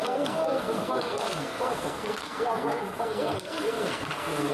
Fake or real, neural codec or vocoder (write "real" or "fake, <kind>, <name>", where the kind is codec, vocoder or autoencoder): fake, codec, SNAC